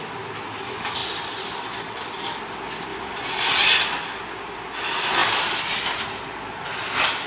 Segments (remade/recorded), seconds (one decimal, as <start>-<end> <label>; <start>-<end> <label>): 0.0-1.0 recorded; 1.0-2.4 remade; 2.4-2.9 recorded; 2.9-3.7 remade; 3.7-5.2 recorded; 5.2-5.8 remade; 5.8-7.3 recorded